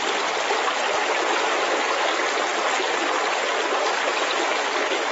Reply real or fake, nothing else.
real